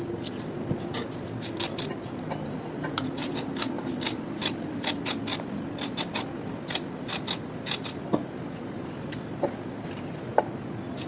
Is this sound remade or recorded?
recorded